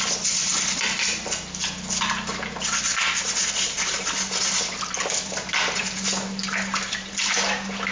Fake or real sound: real